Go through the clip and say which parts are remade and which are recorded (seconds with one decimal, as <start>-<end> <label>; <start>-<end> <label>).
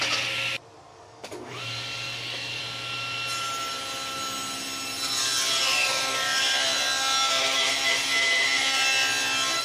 0.0-0.9 recorded; 0.9-2.6 remade; 2.6-9.6 recorded